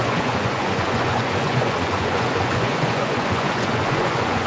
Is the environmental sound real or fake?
fake